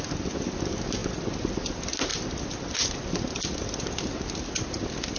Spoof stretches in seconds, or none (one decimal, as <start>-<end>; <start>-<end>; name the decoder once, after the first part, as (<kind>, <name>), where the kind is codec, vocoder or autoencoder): none

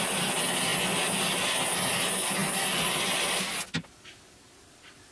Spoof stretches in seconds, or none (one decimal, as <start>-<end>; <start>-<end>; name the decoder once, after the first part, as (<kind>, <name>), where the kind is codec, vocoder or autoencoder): none

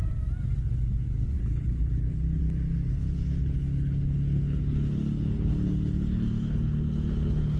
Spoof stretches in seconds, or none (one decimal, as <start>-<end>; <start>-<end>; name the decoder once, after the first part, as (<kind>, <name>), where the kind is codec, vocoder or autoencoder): 0.6-2.4 (codec, HILCodec); 2.9-7.6

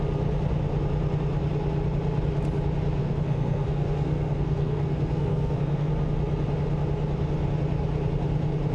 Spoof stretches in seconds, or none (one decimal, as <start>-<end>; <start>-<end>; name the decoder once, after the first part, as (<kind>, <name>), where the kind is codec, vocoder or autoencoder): 3.0-5.9 (codec, SNAC)

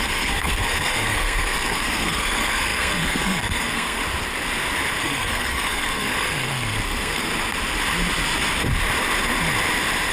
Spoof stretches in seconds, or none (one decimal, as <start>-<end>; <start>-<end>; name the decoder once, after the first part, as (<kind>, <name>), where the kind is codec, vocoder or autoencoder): 0.0-4.0 (codec, SNAC); 5.0-7.3

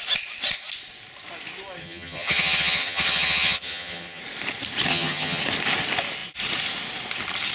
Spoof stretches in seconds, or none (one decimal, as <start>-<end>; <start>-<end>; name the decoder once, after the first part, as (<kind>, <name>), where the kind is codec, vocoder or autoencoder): 1.8-4.2 (vocoder, HiFi-GAN); 4.9-5.4

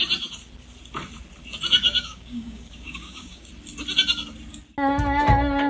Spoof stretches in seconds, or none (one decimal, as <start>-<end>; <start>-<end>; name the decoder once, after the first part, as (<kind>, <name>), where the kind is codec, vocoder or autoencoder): 1.8-3.5 (codec, DAC)